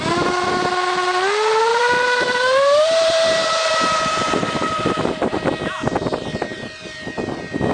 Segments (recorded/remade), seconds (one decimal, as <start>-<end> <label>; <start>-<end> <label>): 0.0-1.7 recorded; 1.7-5.6 remade; 5.6-7.7 recorded